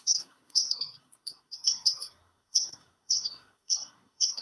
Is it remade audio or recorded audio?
remade